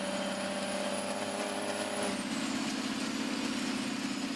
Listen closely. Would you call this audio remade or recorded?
recorded